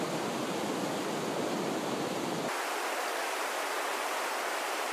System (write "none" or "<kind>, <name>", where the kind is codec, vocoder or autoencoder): none